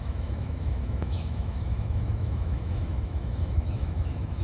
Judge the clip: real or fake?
fake